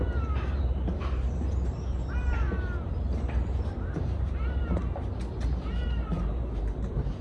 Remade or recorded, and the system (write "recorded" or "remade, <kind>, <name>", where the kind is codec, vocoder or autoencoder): remade, vocoder, BigVGAN v2